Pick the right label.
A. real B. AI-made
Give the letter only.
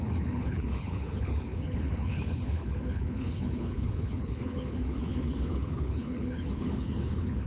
B